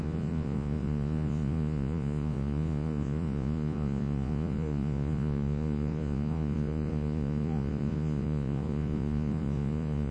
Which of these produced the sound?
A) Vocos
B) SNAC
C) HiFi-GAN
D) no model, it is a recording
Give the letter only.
A